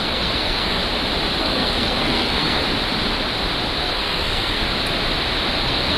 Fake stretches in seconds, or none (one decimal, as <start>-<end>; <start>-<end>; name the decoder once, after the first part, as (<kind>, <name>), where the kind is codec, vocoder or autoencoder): 0.0-0.8 (codec, SNAC); 1.4-2.6; 3.8-4.7; 5.6-6.0